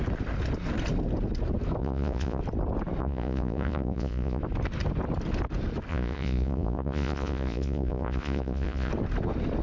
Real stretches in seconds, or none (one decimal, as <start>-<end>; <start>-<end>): 0.0-1.8; 2.4-3.0; 4.4-5.9; 8.9-9.6